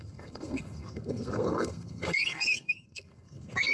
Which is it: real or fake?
fake